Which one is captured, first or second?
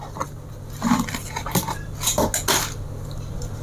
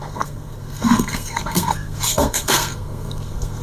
first